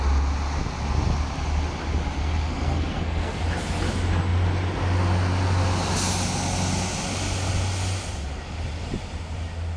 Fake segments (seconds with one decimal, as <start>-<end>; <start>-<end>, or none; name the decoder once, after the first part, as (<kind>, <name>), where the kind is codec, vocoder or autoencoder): 2.2-3.4 (codec, SNAC)